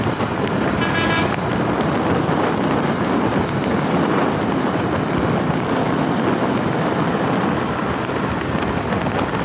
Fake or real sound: real